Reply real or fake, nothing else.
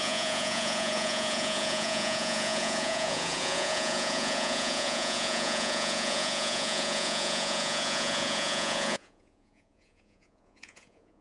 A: fake